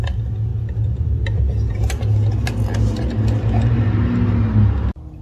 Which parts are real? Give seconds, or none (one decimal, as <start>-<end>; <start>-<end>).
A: 0.0-0.5; 1.5-5.2